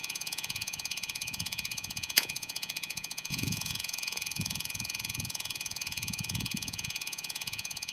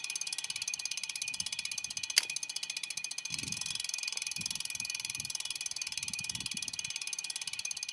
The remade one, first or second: first